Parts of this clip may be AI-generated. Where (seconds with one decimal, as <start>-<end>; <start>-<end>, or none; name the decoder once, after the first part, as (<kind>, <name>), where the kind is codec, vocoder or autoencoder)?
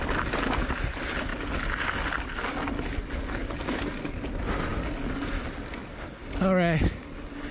none